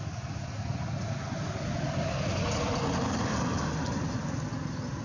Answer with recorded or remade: recorded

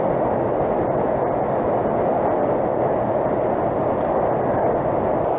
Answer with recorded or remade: recorded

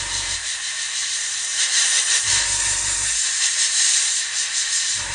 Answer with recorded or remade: remade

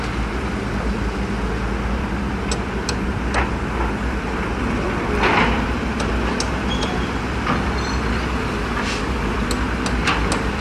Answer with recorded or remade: recorded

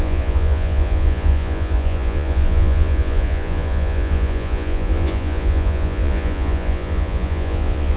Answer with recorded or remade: remade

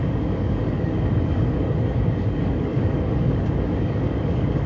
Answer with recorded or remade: remade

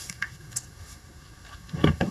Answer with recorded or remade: remade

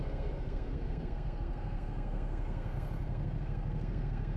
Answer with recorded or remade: remade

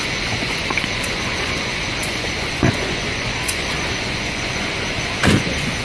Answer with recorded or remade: remade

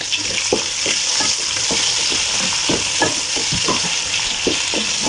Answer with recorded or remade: recorded